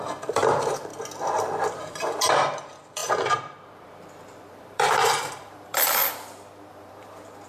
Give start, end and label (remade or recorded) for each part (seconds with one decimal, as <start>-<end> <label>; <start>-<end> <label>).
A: 0.0-0.9 remade; 0.9-1.8 recorded; 1.8-6.0 remade; 6.0-6.7 recorded; 6.7-7.5 remade